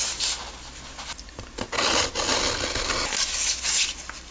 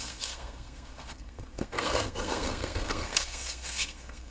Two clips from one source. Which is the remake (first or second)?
second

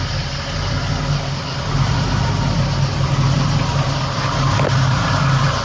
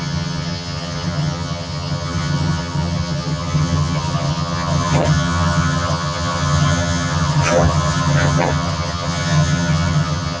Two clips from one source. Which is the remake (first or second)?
second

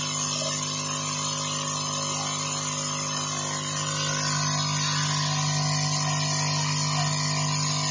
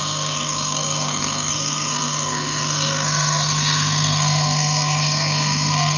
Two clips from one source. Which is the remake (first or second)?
second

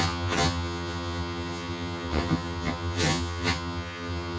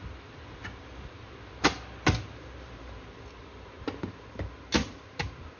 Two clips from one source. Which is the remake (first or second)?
first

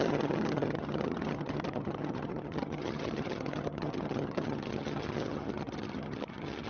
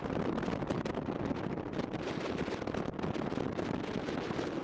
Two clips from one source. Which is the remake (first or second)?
first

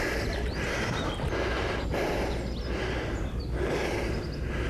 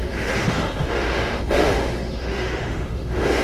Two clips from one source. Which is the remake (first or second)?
second